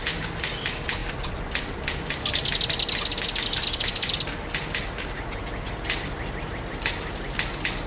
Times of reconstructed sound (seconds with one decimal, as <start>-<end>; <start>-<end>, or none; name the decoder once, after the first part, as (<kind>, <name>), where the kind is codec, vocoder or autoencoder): none